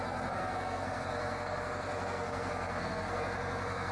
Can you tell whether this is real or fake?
fake